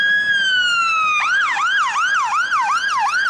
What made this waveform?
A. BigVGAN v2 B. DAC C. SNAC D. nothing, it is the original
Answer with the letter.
D